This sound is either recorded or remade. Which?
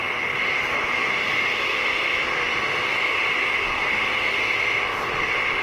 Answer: recorded